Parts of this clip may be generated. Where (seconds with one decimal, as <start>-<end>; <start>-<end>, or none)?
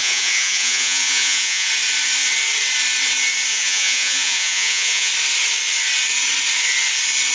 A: 0.0-1.7; 3.5-5.1